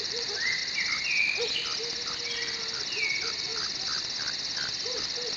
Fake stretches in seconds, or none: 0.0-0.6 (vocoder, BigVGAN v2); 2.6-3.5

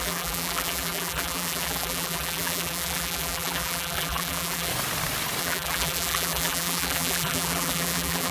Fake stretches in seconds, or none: 0.0-4.7 (vocoder, BigVGAN v2); 5.4-8.3

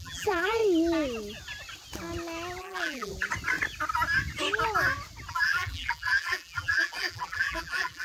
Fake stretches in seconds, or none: 0.0-0.6 (vocoder, BigVGAN v2); 2.6-3.1; 5.3-8.0

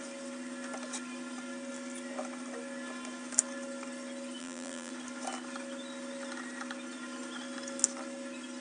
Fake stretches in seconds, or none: 4.4-4.9 (vocoder, BigVGAN v2)

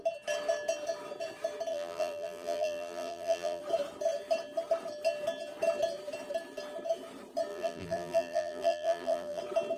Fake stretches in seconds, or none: 1.7-3.6 (vocoder, BigVGAN v2); 7.5-9.4